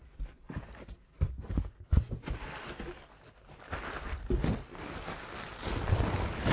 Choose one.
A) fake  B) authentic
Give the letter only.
B